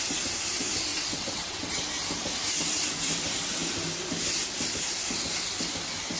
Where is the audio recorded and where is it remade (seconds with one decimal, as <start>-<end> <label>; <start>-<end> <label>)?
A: 0.0-0.9 recorded; 0.9-1.8 remade; 1.8-6.2 recorded